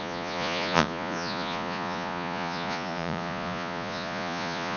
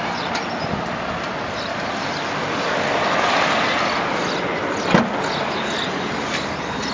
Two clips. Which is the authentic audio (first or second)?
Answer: second